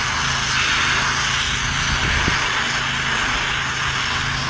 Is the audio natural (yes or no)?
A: yes